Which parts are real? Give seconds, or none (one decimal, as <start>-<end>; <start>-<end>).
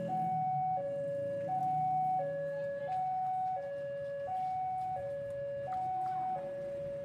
0.0-7.0